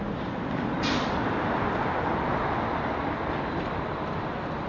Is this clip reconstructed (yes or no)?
no